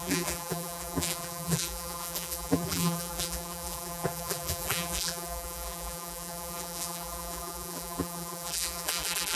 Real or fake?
fake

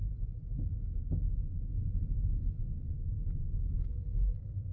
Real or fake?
fake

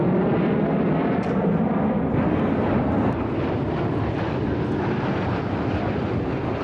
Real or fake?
fake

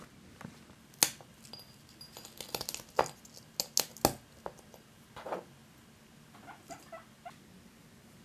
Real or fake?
real